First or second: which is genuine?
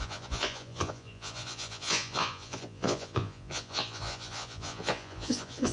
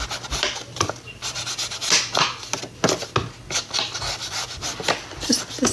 second